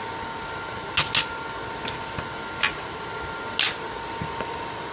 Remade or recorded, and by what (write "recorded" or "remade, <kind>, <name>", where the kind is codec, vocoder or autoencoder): recorded